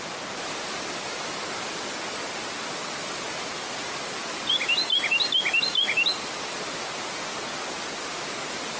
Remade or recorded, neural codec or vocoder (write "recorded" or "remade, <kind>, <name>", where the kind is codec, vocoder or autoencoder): recorded